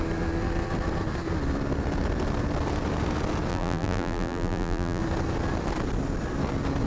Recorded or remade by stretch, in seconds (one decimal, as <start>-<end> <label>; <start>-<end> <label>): 0.0-3.5 recorded; 3.5-5.0 remade; 5.0-6.9 recorded